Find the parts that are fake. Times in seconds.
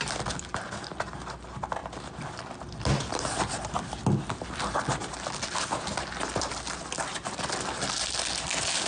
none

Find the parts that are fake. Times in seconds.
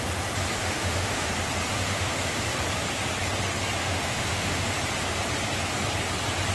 0.6-1.3 (autoencoder, DAC-VAE); 1.8-2.4; 3.8-4.7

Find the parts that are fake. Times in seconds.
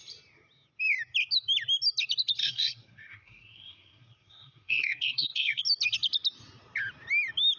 2.4-5.6 (codec, SNAC)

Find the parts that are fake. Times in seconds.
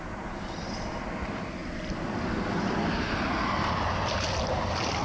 none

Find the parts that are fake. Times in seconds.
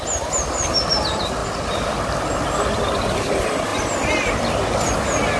none